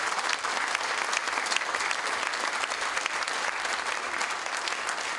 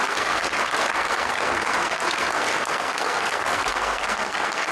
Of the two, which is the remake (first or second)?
second